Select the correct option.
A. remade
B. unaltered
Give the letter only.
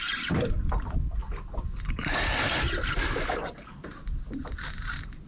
B